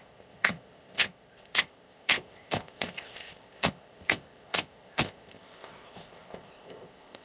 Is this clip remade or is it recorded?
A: remade